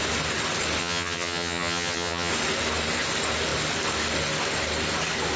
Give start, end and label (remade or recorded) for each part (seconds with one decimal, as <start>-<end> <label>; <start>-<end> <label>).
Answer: 0.0-0.8 recorded; 0.8-2.3 remade; 2.3-5.4 recorded